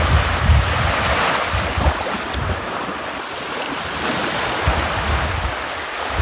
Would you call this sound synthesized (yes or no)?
no